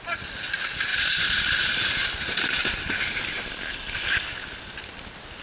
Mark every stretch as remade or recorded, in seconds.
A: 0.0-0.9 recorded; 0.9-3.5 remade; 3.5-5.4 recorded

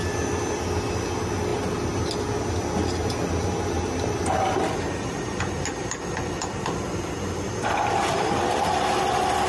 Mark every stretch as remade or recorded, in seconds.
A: 0.0-9.5 recorded

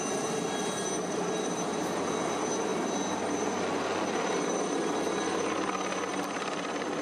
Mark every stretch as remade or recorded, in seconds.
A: 0.0-7.0 recorded

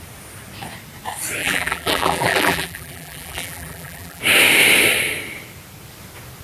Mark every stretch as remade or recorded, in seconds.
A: 0.0-1.4 recorded; 1.4-4.2 remade; 4.2-6.4 recorded